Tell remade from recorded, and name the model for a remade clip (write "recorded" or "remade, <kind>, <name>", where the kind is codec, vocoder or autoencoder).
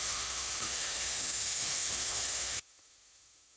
remade, autoencoder, DAC-VAE